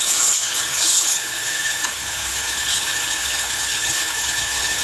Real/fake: fake